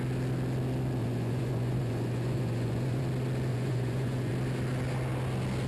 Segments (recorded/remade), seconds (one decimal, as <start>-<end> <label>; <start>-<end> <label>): 0.0-1.0 recorded; 1.0-3.0 remade; 3.0-3.5 recorded; 3.5-4.3 remade; 4.3-5.7 recorded